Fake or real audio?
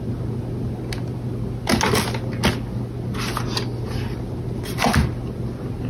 real